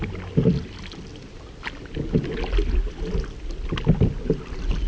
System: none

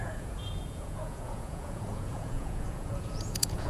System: vocoder, Vocos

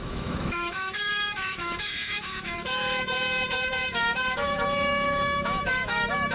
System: autoencoder, DAC-VAE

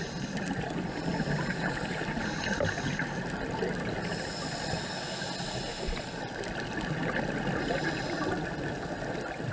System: none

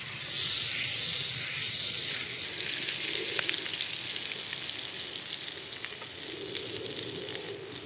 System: none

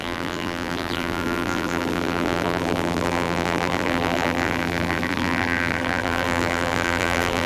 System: vocoder, BigVGAN v2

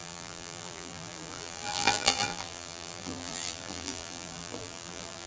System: vocoder, BigVGAN v2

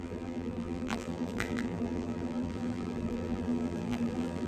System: vocoder, BigVGAN v2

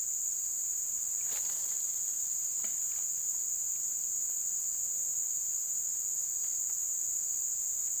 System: none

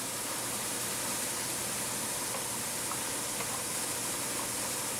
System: none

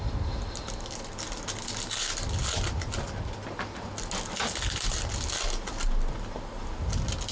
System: none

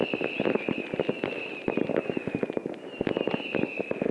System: none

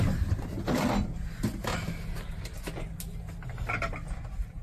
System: none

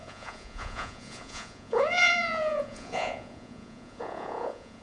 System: vocoder, Vocos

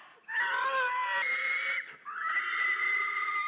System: none